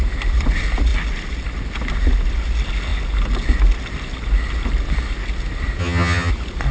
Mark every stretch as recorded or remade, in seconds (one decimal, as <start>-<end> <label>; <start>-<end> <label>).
0.0-5.8 recorded; 5.8-6.3 remade; 6.3-6.7 recorded